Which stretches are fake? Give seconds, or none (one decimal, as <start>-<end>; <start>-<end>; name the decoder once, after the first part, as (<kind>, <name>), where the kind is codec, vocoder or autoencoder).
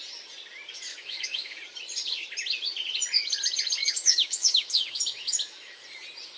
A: 0.9-1.6 (autoencoder, DAC-VAE); 3.8-5.8